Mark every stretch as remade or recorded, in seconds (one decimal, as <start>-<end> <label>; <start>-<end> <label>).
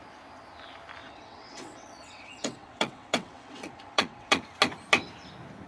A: 0.0-1.0 recorded; 1.0-4.4 remade; 4.4-5.7 recorded